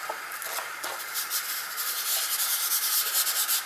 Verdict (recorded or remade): recorded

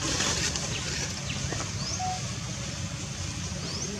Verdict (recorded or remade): recorded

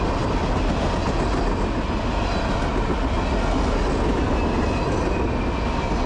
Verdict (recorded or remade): recorded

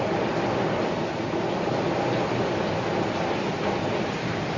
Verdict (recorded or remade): recorded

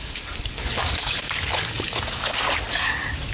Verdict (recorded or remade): remade